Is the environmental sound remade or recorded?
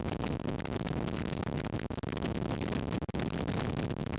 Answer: recorded